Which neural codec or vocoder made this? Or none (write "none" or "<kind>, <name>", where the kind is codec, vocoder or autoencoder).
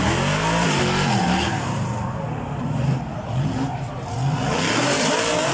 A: none